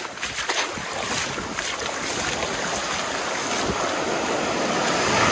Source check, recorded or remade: recorded